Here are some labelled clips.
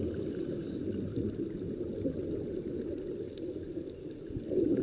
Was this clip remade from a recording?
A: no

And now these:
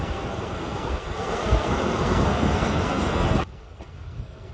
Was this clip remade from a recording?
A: yes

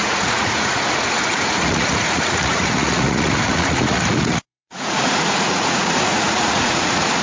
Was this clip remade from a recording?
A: yes